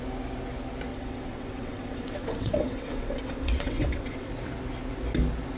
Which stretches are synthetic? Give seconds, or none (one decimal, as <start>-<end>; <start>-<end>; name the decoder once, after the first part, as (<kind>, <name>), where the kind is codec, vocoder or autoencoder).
0.9-4.3 (vocoder, WaveNeXt)

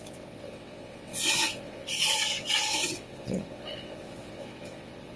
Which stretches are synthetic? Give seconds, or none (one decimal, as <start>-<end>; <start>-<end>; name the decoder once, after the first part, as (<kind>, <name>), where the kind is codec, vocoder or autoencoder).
0.0-5.2 (vocoder, WaveNeXt)

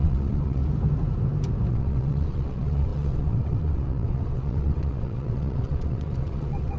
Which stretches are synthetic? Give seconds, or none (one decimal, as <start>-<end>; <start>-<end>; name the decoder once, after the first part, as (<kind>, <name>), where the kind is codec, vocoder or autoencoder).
0.0-0.6 (vocoder, WaveNeXt); 1.7-6.8

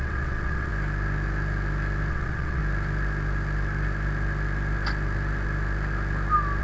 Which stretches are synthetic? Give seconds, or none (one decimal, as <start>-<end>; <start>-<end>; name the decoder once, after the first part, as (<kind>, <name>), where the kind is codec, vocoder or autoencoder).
0.0-0.7 (vocoder, WaveNeXt); 2.1-2.6

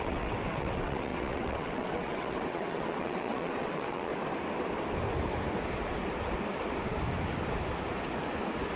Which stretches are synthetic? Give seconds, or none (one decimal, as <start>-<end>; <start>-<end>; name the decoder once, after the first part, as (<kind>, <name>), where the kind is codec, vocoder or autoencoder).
0.0-4.1 (vocoder, WaveNeXt)

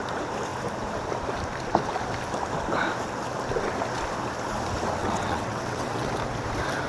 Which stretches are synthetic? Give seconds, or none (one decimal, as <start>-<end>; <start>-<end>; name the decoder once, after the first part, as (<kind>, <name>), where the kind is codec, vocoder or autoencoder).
5.0-6.1 (vocoder, WaveNeXt)

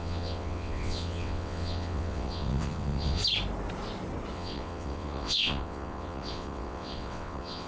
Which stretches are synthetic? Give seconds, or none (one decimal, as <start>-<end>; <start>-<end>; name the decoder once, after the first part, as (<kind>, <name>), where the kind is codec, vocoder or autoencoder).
0.0-3.2 (vocoder, WaveNeXt); 4.3-7.7

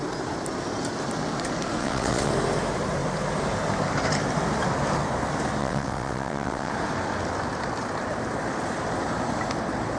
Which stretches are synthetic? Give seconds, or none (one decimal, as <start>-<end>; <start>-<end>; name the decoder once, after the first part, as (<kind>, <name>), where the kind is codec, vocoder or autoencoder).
1.8-2.3 (vocoder, WaveNeXt); 5.6-6.7